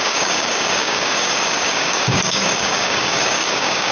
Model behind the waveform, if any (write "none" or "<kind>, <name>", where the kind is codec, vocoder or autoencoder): codec, DAC